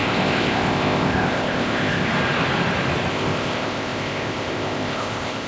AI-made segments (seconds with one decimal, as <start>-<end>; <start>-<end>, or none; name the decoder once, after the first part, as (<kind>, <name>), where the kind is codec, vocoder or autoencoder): 0.0-2.1 (codec, ZipCodec); 3.1-5.5